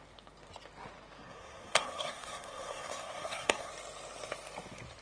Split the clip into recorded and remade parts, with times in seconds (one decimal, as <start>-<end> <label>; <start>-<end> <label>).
0.0-1.2 recorded; 1.2-3.7 remade; 3.7-5.0 recorded